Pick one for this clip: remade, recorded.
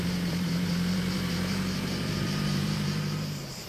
remade